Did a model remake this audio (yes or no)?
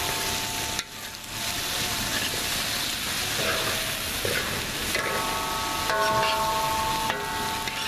no